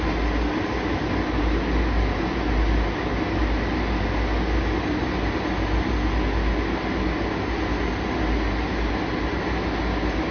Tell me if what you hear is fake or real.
real